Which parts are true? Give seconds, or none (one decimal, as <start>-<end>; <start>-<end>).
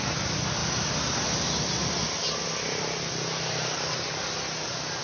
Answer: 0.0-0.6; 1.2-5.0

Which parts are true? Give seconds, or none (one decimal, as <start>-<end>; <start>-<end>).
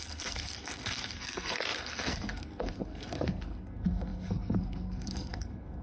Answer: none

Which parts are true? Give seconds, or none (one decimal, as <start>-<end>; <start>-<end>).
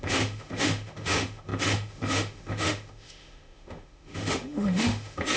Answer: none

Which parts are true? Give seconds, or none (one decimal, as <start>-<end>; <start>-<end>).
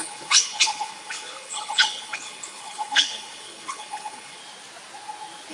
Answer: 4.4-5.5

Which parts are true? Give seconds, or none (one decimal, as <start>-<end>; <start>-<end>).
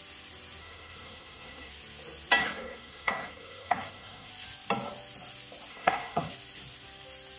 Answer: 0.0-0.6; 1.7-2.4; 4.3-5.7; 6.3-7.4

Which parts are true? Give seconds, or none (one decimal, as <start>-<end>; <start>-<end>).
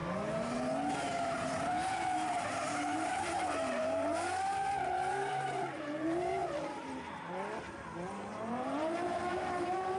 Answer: 0.0-0.9; 6.4-8.3